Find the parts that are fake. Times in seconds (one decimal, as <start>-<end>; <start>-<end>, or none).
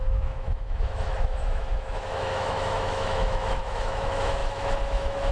0.0-5.3